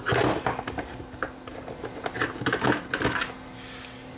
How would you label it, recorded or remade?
recorded